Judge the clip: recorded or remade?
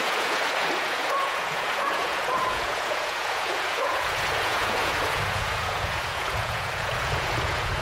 remade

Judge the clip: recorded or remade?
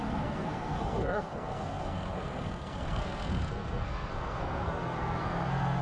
remade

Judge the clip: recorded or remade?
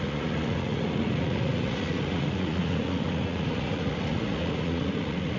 remade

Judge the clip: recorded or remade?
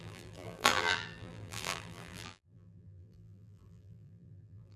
remade